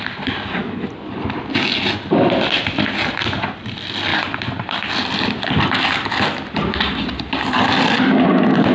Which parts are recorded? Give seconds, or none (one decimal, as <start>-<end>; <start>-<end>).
0.0-4.1; 8.0-8.7